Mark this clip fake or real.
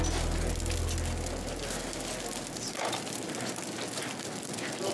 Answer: real